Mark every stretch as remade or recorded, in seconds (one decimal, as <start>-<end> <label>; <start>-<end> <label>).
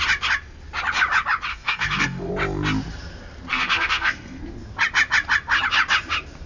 0.0-1.5 recorded; 1.5-2.3 remade; 2.3-3.5 recorded; 3.5-4.4 remade; 4.4-6.5 recorded